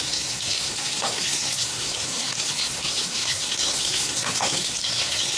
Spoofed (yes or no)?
yes